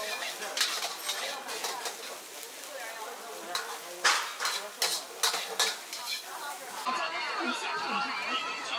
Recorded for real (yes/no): yes